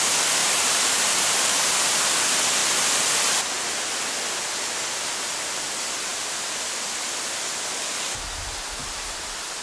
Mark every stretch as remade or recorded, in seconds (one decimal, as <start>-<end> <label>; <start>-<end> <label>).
0.0-0.4 recorded; 0.4-1.7 remade; 1.7-6.1 recorded; 6.1-6.9 remade; 6.9-8.8 recorded; 8.8-9.6 remade